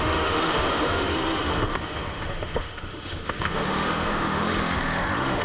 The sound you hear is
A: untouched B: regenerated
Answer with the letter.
B